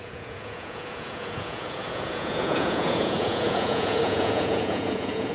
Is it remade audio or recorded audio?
remade